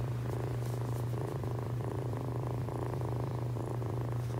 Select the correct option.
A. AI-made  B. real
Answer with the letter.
A